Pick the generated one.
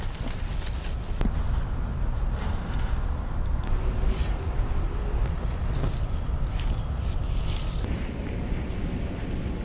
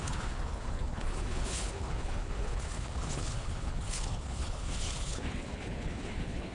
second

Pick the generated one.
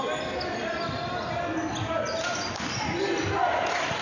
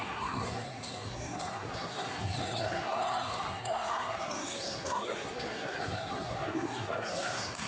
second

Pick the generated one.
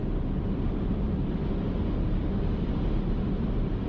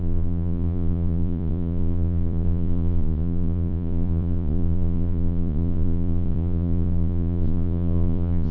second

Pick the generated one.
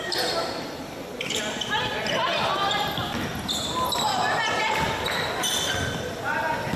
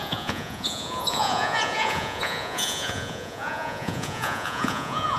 second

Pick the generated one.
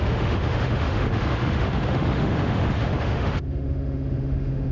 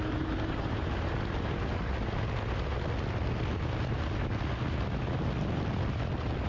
first